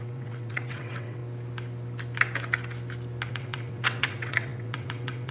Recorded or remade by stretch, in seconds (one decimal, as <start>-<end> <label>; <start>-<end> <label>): 0.0-1.2 remade; 1.2-3.3 recorded; 3.3-5.3 remade